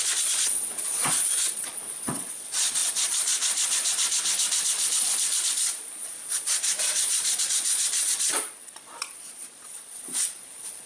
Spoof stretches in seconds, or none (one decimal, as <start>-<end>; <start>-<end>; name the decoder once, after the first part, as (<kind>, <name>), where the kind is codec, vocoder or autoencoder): 0.0-10.9 (vocoder, Vocos)